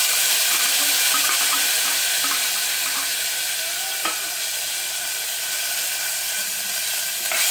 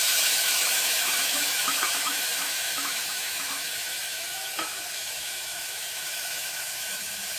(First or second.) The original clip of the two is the first